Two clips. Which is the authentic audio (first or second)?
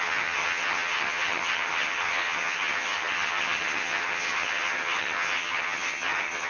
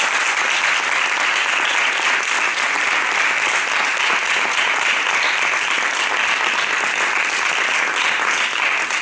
second